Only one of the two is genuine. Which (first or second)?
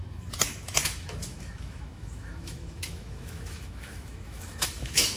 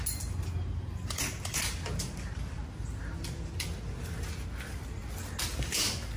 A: second